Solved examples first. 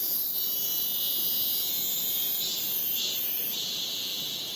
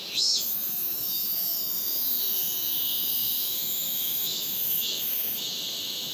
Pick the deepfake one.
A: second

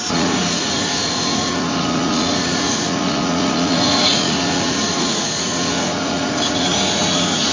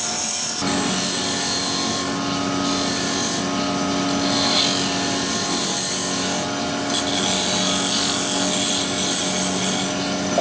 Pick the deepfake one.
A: first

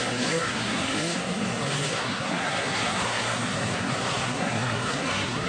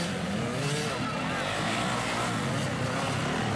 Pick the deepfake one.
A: first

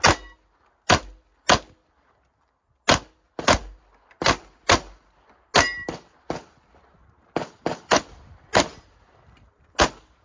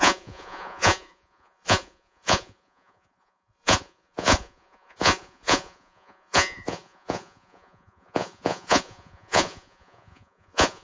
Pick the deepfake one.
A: second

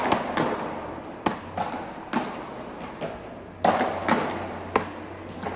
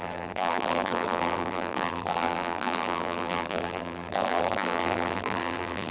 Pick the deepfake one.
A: second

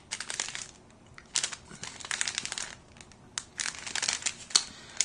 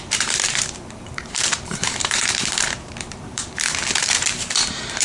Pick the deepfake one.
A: second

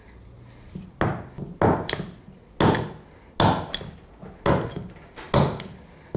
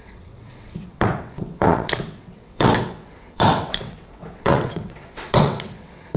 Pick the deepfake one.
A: second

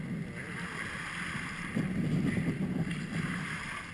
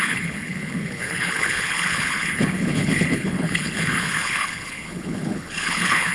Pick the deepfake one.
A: second